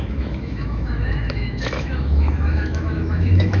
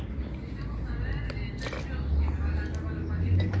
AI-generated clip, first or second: first